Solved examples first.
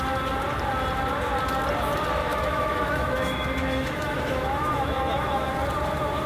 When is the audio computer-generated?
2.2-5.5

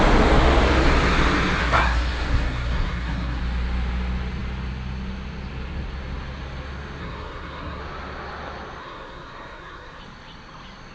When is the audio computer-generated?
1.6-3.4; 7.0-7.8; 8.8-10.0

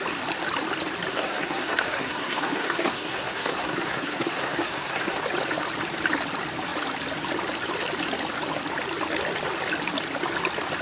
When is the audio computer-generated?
1.1-5.2